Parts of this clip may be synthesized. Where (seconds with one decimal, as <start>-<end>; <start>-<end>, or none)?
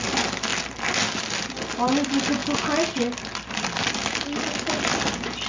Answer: none